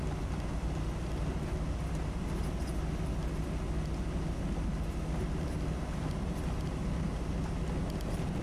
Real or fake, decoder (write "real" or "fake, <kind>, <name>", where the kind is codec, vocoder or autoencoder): real